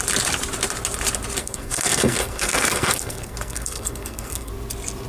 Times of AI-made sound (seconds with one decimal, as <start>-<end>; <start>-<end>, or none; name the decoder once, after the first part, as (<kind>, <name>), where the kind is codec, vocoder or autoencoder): 1.4-4.5 (codec, SNAC)